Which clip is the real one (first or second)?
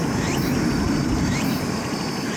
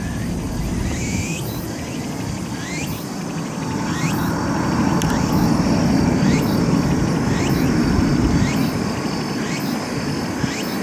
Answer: second